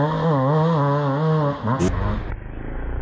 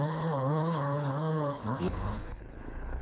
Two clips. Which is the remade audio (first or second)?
second